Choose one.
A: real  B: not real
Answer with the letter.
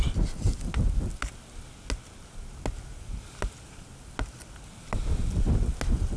A